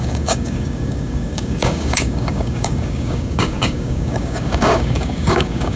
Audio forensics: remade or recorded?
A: remade